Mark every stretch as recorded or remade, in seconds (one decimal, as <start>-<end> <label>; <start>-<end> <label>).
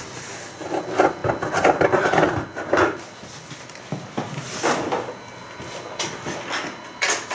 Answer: 0.0-7.3 recorded